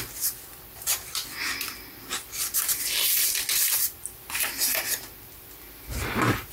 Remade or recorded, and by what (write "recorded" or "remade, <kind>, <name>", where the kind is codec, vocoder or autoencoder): remade, vocoder, BigVGAN v2